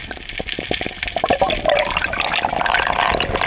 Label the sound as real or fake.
real